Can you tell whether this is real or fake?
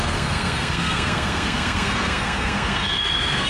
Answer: fake